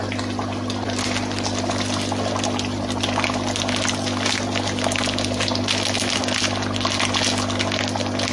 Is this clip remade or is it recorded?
recorded